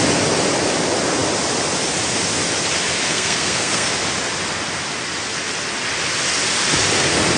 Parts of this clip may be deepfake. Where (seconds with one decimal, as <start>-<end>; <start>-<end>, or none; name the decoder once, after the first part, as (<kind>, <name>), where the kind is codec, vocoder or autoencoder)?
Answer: 3.1-3.9 (codec, SNAC)